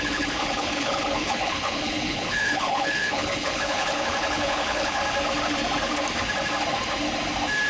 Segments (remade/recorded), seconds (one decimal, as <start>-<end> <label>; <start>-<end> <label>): 0.0-5.0 remade; 5.0-7.7 recorded